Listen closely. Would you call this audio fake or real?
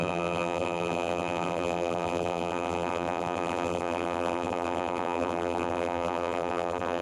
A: fake